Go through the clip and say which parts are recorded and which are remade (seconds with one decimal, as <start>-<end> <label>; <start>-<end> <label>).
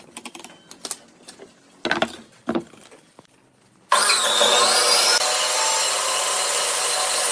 0.0-7.3 recorded